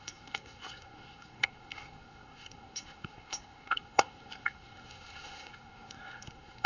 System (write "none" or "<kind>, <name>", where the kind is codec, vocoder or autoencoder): codec, SNAC